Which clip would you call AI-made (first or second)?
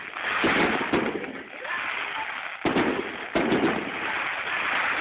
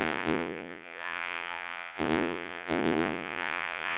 second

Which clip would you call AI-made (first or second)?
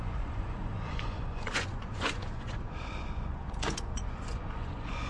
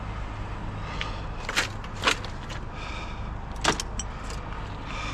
first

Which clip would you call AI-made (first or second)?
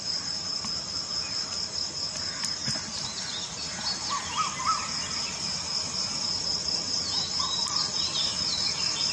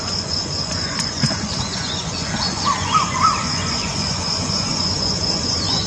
second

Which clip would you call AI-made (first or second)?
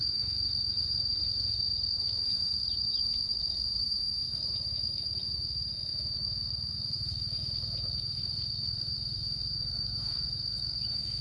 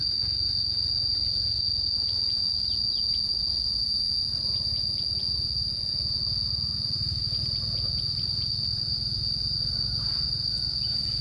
first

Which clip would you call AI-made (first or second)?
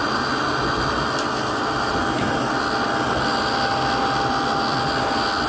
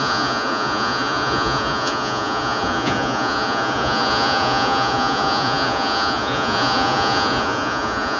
second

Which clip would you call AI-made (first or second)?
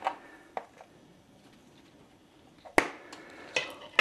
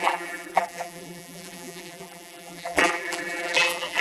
second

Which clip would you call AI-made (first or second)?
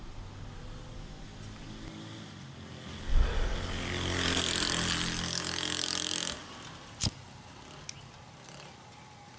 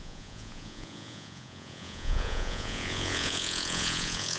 second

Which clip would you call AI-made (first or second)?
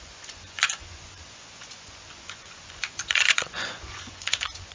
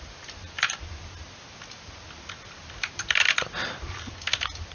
first